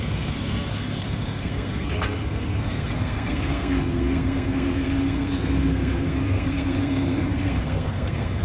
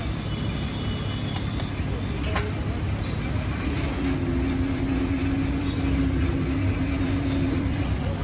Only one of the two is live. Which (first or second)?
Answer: second